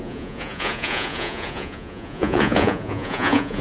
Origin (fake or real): fake